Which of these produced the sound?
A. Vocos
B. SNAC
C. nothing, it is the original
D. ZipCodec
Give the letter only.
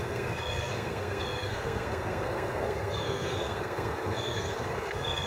B